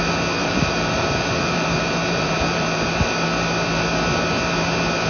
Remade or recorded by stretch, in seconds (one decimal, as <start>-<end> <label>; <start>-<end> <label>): 0.0-0.4 recorded; 0.4-2.9 remade; 2.9-5.1 recorded